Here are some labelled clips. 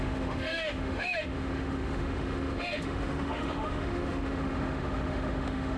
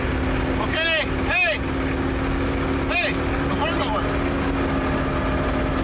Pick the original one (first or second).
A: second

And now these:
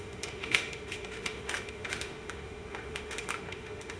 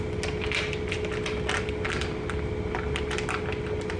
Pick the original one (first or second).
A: second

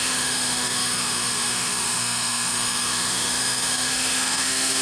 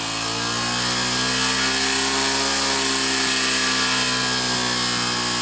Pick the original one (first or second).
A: second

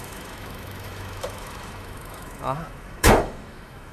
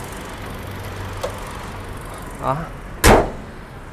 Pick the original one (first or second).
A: second